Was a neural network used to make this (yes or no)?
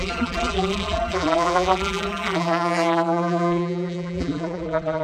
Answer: yes